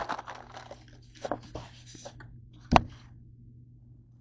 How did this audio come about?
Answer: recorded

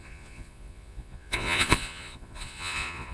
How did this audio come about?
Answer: remade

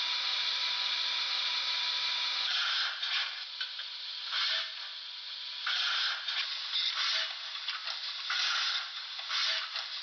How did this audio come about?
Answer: recorded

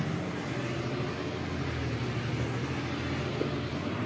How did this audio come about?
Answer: recorded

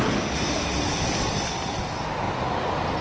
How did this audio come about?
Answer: recorded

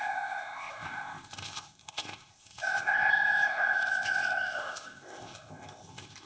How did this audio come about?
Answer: remade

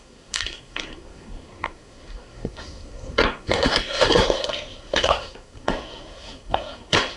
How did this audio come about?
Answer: remade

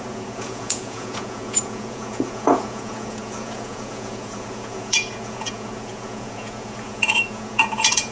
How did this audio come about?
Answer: remade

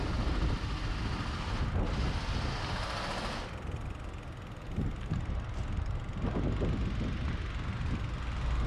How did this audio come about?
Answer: recorded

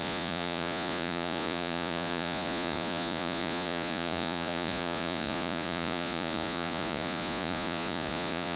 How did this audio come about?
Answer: remade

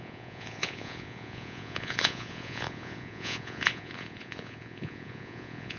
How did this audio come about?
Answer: remade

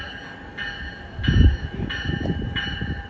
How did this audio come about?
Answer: recorded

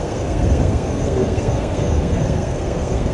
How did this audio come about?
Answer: remade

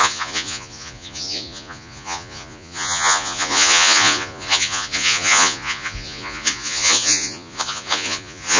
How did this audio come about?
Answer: remade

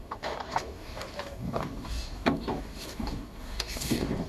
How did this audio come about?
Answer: remade